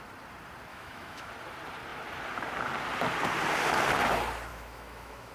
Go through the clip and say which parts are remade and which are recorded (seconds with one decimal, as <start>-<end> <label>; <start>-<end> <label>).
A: 0.0-0.7 recorded; 0.7-1.3 remade; 1.3-4.5 recorded; 4.5-5.3 remade